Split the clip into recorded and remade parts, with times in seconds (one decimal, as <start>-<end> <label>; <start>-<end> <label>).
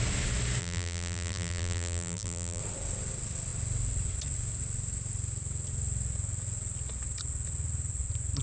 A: 0.0-0.6 recorded; 0.6-2.6 remade; 2.6-8.4 recorded